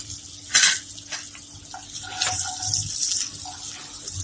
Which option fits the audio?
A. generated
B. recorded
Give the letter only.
B